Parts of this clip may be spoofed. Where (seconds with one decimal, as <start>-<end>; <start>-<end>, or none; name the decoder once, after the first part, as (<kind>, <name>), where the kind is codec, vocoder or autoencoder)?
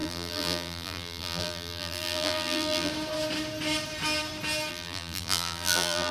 0.0-2.9 (vocoder, BigVGAN v2); 4.7-6.1